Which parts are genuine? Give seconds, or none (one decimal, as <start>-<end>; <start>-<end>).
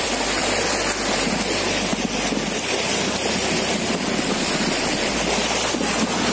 0.0-6.3